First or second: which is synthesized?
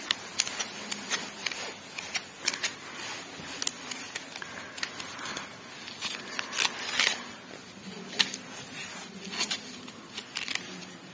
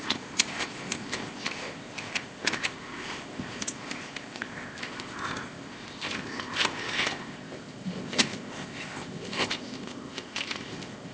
second